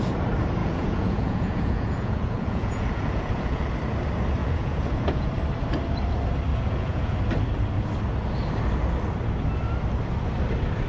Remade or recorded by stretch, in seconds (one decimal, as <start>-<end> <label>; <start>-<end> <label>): 0.0-0.6 recorded; 0.6-3.7 remade; 3.7-4.4 recorded; 4.4-5.3 remade; 5.3-6.5 recorded; 6.5-7.2 remade; 7.2-10.9 recorded